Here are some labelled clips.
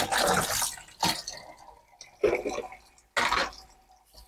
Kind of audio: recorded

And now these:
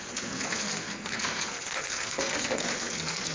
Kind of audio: remade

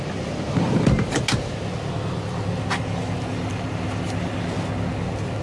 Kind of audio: recorded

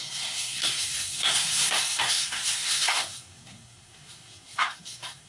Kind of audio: remade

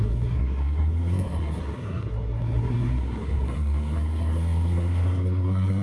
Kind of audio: remade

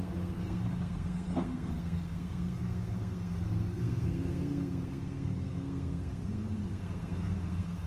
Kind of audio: remade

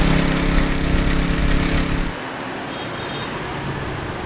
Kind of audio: recorded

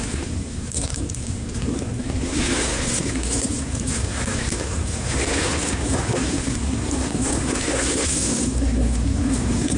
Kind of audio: remade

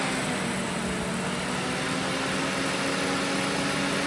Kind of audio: recorded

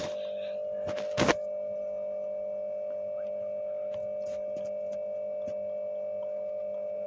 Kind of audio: recorded